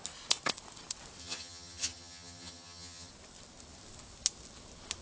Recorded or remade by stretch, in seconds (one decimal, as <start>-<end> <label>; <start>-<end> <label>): 0.0-1.2 recorded; 1.2-3.1 remade; 3.1-5.0 recorded